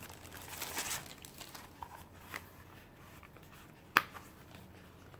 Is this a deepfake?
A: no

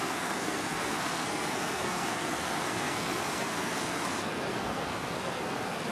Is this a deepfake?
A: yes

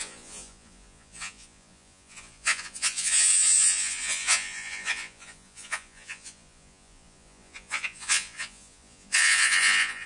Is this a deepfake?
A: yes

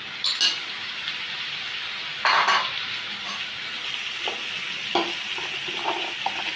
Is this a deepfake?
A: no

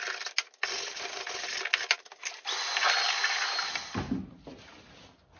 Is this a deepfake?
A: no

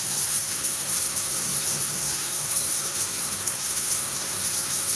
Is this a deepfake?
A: yes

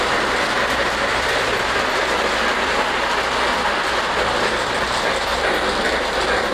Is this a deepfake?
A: no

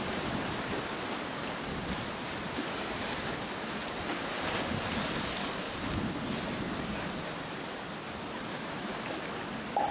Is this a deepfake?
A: no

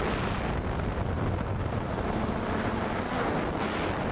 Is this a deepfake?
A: no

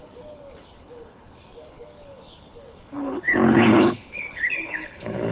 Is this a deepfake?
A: yes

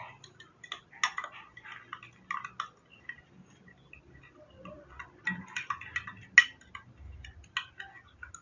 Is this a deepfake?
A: no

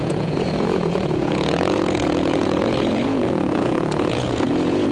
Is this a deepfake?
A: yes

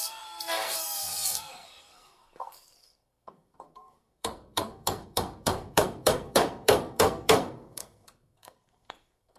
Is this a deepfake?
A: yes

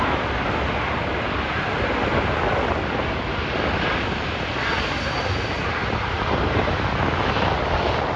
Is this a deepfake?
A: no